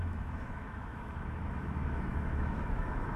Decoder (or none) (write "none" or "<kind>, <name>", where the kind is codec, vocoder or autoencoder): autoencoder, DAC-VAE